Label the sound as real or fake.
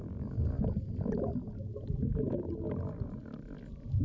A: real